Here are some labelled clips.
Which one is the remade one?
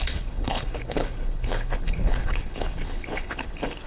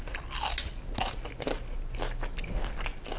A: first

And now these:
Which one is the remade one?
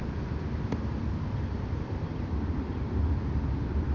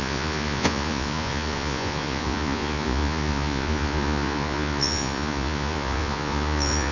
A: second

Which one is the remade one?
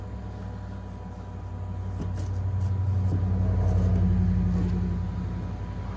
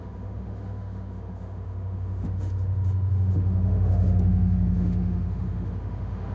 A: second